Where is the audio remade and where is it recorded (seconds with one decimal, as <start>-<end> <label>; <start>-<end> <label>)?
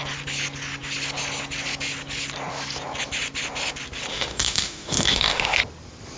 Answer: 0.0-4.1 recorded; 4.1-5.6 remade; 5.6-6.2 recorded